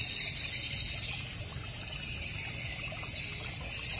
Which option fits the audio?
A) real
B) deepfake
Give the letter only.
A